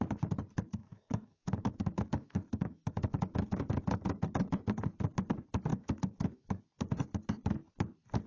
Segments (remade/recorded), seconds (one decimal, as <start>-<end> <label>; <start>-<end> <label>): 0.0-0.8 recorded; 0.8-4.5 remade; 4.5-5.7 recorded; 5.7-6.6 remade; 6.6-8.3 recorded